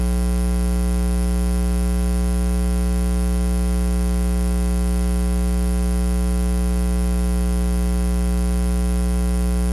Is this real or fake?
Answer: real